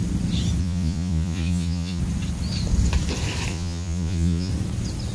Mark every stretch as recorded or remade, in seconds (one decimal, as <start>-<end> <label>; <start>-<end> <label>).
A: 0.0-0.6 recorded; 0.6-2.0 remade; 2.0-3.5 recorded; 3.5-4.5 remade; 4.5-5.1 recorded